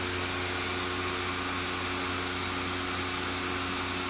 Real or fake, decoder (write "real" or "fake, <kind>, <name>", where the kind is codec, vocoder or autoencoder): real